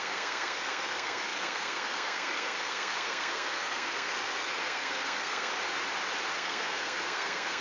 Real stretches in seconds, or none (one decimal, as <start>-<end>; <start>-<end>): 5.5-6.3